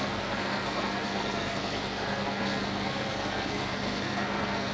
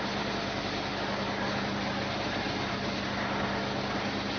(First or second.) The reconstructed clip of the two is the first